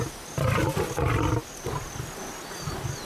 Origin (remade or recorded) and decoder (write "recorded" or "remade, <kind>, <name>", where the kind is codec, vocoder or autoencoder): recorded